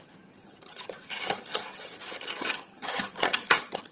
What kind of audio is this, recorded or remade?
remade